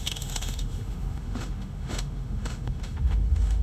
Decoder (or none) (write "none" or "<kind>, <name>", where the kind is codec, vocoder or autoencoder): autoencoder, DAC-VAE